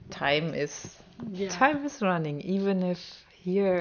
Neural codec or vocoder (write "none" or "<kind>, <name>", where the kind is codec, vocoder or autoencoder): none